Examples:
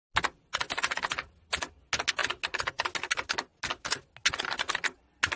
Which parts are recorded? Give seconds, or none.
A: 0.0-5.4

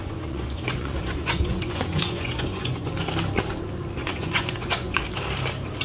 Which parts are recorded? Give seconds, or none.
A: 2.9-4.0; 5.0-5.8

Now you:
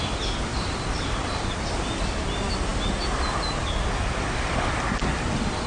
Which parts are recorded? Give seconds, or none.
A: 0.0-5.7

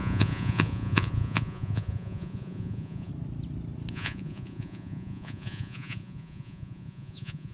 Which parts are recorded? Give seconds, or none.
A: 3.1-3.9

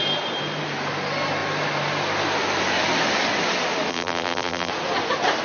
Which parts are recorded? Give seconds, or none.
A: 0.0-3.9; 4.7-5.4